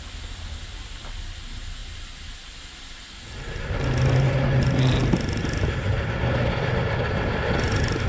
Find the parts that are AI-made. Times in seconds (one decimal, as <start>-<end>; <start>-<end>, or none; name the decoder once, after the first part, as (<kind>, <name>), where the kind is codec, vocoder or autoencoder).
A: none